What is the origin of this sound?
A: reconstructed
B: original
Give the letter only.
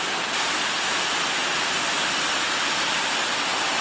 B